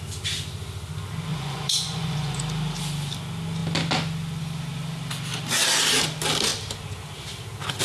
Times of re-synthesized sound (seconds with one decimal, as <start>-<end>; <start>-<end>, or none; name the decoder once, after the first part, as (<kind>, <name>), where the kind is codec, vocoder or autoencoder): 1.3-2.4 (vocoder, Vocos)